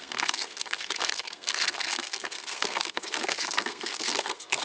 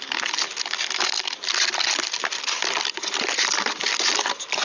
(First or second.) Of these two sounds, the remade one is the first